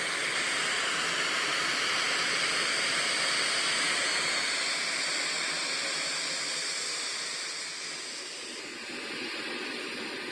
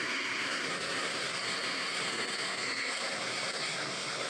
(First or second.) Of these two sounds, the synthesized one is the second